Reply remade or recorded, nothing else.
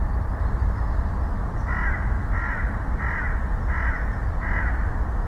recorded